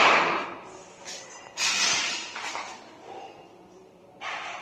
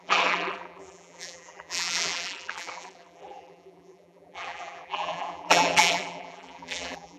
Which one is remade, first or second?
second